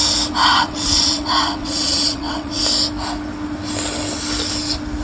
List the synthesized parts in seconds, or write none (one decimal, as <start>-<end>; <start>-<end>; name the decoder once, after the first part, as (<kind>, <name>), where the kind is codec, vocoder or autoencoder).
0.4-2.6 (vocoder, WaveNeXt)